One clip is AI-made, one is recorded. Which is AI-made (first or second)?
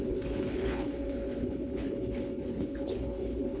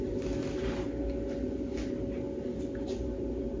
first